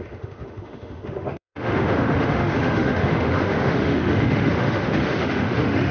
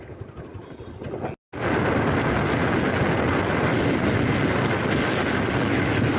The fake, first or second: first